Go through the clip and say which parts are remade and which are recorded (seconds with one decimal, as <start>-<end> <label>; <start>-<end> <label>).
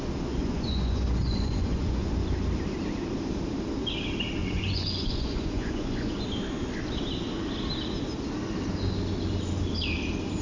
0.0-0.4 recorded; 0.4-2.1 remade; 2.1-4.4 recorded; 4.4-6.2 remade; 6.2-10.4 recorded